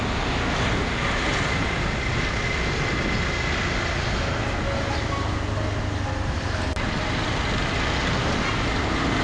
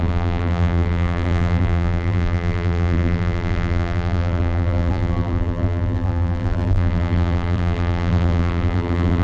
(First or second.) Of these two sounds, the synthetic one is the second